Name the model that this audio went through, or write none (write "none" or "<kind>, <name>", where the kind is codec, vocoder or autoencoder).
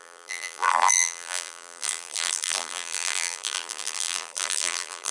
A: vocoder, BigVGAN v2